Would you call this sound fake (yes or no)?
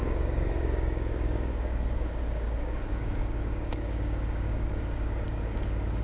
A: yes